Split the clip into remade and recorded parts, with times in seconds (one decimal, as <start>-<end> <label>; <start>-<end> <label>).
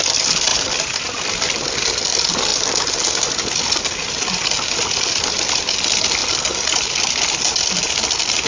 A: 0.0-0.5 recorded; 0.5-1.2 remade; 1.2-8.5 recorded